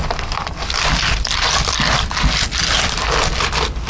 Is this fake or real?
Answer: real